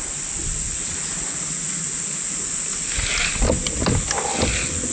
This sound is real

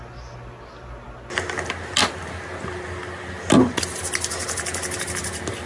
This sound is real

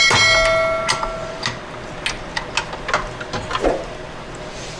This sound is real